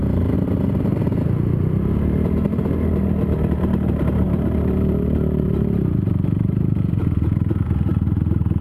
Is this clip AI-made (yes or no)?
yes